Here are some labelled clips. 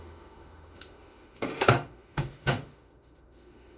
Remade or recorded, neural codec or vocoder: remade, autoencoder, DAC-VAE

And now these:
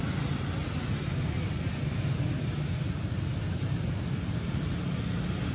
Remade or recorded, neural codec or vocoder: recorded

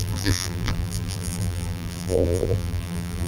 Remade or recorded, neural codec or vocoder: remade, vocoder, BigVGAN v2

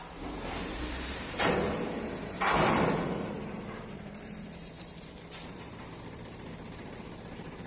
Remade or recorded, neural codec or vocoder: remade, vocoder, BigVGAN v2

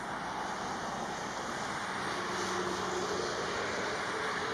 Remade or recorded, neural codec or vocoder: recorded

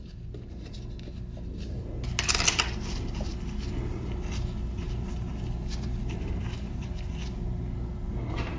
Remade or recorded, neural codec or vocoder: recorded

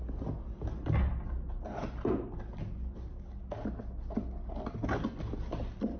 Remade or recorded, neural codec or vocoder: recorded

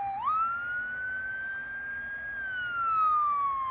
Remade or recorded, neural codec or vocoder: recorded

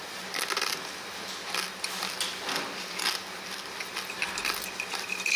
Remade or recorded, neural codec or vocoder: recorded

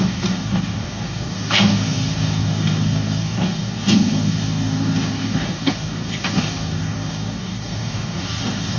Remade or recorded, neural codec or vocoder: remade, codec, DAC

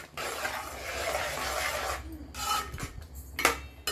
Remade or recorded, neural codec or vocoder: recorded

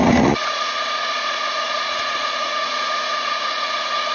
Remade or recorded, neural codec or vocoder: remade, vocoder, Vocos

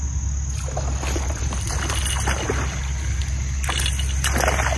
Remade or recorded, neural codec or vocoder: recorded